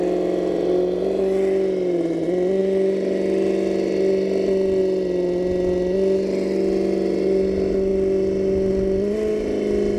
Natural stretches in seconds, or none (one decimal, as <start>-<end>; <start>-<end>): 0.0-10.0